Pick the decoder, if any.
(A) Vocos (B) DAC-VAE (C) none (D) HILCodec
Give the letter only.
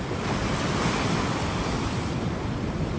C